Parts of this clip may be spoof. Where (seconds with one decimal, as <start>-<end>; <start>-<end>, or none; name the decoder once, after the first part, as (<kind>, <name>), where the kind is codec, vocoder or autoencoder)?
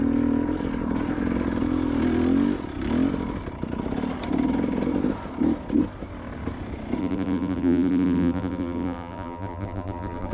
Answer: 7.0-10.3 (vocoder, BigVGAN v2)